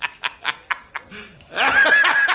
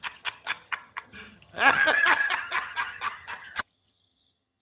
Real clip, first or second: first